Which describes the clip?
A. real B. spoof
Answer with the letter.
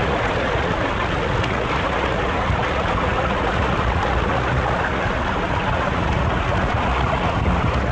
B